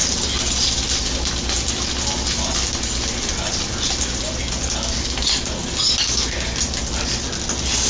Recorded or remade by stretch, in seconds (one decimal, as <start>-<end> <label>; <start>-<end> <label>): 0.0-7.9 recorded